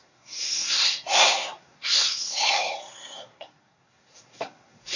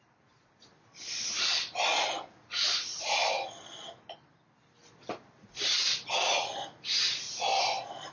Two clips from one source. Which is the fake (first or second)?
first